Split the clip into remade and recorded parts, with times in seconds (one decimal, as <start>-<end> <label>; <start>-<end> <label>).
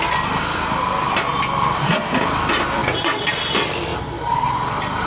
0.0-2.8 recorded; 2.8-3.4 remade; 3.4-5.1 recorded